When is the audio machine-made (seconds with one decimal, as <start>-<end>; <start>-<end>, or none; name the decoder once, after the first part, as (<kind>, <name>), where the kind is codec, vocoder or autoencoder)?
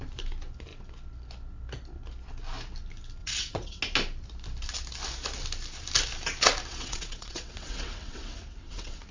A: 3.2-3.8 (vocoder, WaveNeXt); 6.7-9.1